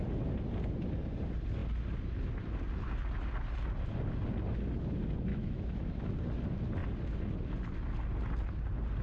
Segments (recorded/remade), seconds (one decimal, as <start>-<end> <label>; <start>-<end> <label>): 0.0-5.3 recorded; 5.3-6.1 remade; 6.1-9.0 recorded